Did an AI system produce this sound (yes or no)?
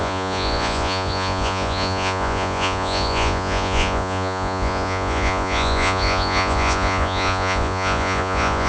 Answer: yes